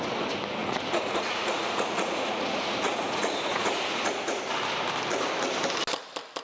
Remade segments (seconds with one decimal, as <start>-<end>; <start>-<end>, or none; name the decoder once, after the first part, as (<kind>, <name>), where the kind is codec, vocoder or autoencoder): 0.6-4.4 (vocoder, Vocos)

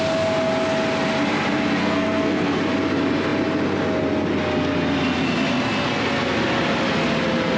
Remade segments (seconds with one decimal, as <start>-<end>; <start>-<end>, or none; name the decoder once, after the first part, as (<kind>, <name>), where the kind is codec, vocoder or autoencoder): 1.8-2.6 (codec, SNAC)